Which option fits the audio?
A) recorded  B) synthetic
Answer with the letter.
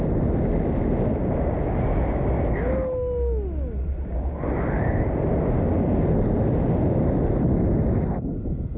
A